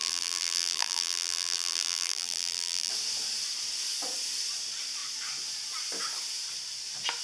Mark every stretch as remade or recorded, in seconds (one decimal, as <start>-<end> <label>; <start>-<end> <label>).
0.0-2.9 remade; 2.9-7.2 recorded